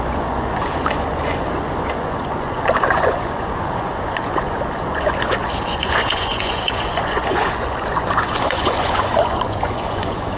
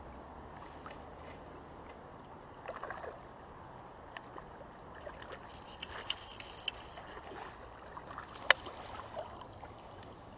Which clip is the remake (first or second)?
first